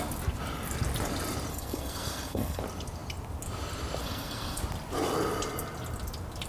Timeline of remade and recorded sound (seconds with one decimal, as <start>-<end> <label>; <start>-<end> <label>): 0.0-1.5 recorded; 1.5-2.6 remade; 2.6-4.0 recorded; 4.0-4.6 remade; 4.6-6.5 recorded